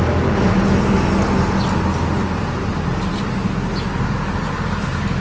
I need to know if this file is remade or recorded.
recorded